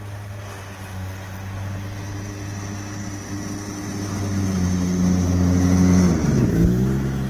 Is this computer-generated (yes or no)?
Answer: no